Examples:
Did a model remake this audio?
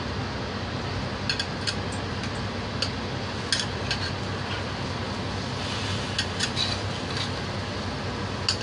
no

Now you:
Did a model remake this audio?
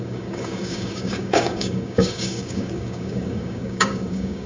yes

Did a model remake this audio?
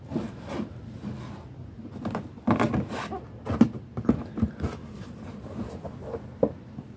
no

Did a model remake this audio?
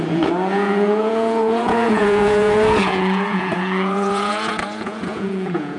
yes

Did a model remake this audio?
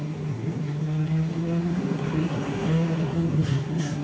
yes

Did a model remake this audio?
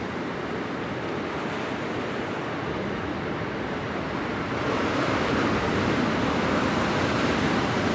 no